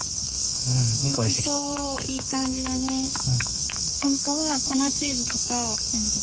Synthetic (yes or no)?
yes